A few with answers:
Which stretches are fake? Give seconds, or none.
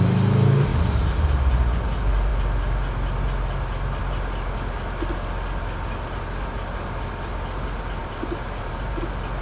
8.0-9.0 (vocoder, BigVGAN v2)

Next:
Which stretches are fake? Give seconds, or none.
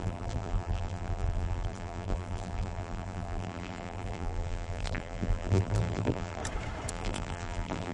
0.0-6.4 (vocoder, BigVGAN v2); 6.9-7.9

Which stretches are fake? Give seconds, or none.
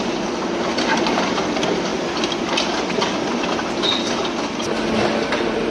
0.0-1.9 (vocoder, BigVGAN v2); 5.3-5.7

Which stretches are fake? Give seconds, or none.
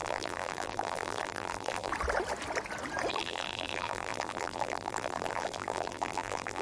0.0-1.9 (vocoder, BigVGAN v2); 3.1-6.6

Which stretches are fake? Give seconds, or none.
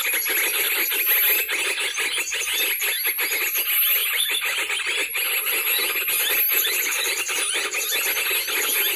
6.5-7.6 (vocoder, BigVGAN v2)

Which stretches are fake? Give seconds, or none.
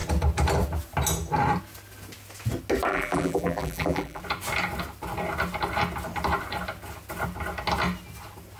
2.9-4.2 (vocoder, BigVGAN v2)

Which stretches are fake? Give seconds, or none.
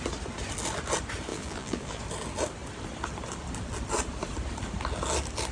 1.3-2.0 (vocoder, BigVGAN v2)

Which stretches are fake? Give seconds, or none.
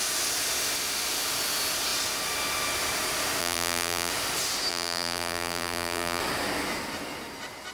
3.4-4.1 (vocoder, BigVGAN v2); 4.7-6.2